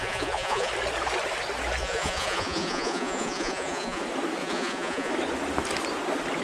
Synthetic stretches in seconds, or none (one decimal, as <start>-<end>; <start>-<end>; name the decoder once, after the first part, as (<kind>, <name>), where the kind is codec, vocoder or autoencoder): 0.0-0.7 (vocoder, Vocos); 1.8-4.0; 4.4-5.1